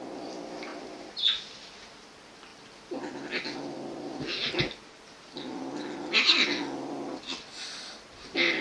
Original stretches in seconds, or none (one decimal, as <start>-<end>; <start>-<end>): 0.0-8.6